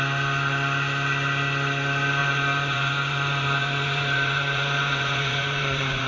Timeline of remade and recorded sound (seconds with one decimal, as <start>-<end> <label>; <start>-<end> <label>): 0.0-2.2 recorded; 2.2-6.1 remade